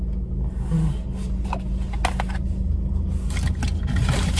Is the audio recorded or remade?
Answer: recorded